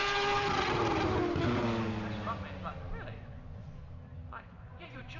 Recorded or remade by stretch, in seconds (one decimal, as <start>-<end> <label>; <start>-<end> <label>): 0.0-3.1 recorded; 3.1-3.8 remade; 3.8-4.4 recorded; 4.4-5.2 remade